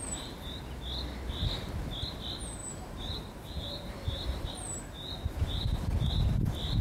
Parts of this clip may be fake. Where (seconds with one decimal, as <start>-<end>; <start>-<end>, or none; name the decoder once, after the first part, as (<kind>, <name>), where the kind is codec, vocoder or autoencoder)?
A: 2.6-4.5 (vocoder, BigVGAN v2); 5.4-6.1